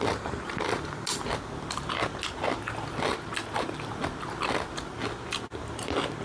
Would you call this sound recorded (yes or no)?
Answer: yes